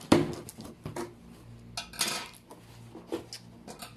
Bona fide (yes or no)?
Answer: yes